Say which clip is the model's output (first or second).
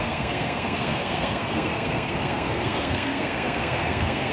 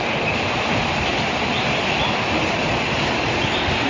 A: first